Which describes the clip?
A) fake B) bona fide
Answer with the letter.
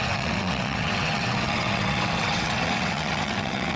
A